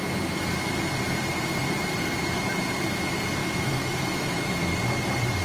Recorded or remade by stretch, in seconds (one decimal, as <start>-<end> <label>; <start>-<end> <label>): 0.0-3.4 recorded; 3.4-4.7 remade; 4.7-5.4 recorded